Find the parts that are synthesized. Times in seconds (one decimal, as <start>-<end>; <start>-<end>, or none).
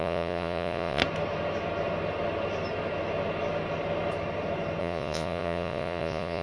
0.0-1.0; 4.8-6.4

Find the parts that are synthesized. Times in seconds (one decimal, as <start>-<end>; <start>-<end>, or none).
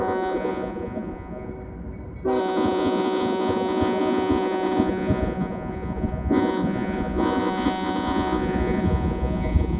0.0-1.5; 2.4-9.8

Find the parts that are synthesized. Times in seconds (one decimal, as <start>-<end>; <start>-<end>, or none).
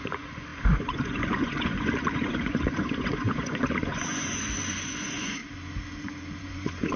0.0-5.4; 6.4-7.0